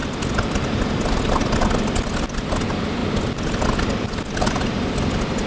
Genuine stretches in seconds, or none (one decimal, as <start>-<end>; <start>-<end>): 0.0-5.5